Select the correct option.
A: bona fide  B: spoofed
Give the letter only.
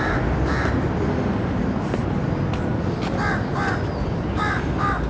A